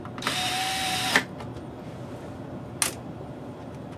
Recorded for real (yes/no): yes